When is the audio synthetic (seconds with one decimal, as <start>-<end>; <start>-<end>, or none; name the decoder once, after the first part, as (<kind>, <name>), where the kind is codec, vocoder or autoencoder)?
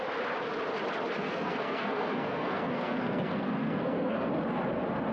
1.2-4.3 (codec, SNAC)